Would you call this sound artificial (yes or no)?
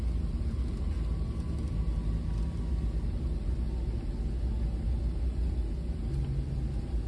no